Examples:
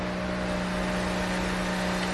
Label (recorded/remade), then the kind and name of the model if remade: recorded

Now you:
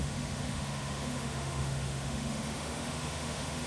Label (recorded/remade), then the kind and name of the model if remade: remade, autoencoder, DAC-VAE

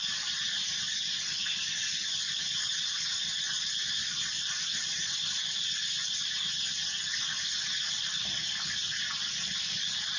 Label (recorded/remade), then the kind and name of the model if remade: recorded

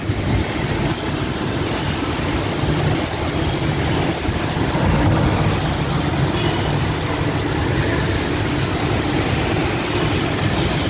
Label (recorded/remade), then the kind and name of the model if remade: recorded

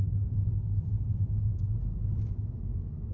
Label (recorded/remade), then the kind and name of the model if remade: recorded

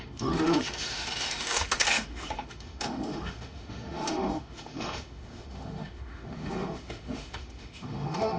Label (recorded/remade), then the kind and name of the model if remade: remade, autoencoder, DAC-VAE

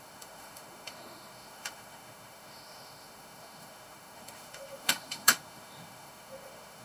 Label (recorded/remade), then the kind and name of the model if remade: remade, autoencoder, DAC-VAE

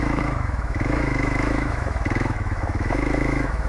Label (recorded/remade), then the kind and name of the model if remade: remade, autoencoder, DAC-VAE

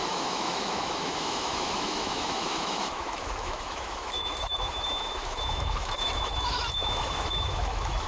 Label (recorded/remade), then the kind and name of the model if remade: remade, autoencoder, DAC-VAE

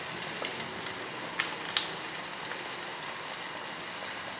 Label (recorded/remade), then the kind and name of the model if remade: recorded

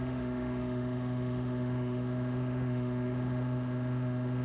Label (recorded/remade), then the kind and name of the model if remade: remade, autoencoder, DAC-VAE